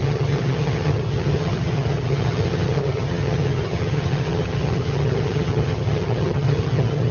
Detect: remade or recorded remade